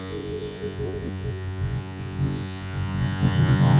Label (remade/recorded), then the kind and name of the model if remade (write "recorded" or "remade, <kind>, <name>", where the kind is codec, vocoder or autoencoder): remade, vocoder, Vocos